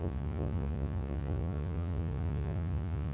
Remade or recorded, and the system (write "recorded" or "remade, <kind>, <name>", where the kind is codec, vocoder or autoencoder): remade, vocoder, Vocos